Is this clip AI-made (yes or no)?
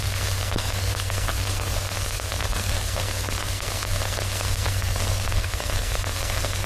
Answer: yes